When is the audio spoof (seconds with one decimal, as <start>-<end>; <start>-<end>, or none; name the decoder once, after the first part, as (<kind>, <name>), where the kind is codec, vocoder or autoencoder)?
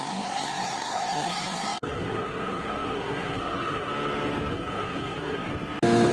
0.0-3.9 (codec, SNAC); 4.5-5.5